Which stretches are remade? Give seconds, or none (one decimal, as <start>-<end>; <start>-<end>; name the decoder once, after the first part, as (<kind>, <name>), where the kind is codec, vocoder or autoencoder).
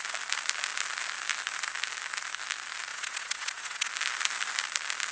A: 2.9-3.9 (vocoder, WaveNeXt)